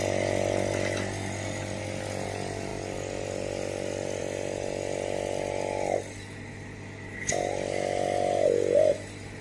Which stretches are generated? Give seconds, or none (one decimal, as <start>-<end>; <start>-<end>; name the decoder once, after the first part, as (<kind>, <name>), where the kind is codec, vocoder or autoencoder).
none